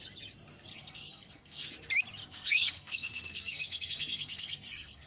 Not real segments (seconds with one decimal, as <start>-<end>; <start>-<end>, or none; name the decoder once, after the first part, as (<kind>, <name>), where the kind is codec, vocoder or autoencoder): 0.7-1.7 (codec, SNAC); 2.2-5.1